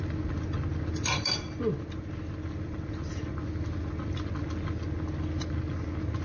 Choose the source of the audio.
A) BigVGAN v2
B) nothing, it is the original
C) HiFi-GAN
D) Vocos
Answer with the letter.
B